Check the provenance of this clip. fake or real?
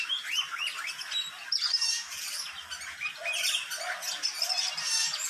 real